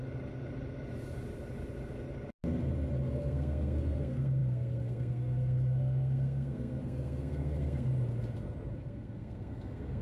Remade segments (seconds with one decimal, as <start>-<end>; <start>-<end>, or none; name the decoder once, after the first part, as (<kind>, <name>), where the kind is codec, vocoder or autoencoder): 3.1-7.9 (codec, SNAC); 8.7-10.0